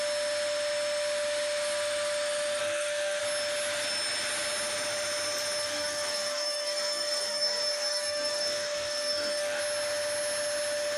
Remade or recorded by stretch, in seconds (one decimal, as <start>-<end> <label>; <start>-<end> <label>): 0.0-2.6 recorded; 2.6-3.2 remade; 3.2-5.6 recorded; 5.6-9.6 remade; 9.6-11.0 recorded